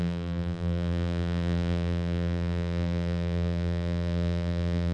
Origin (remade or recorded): remade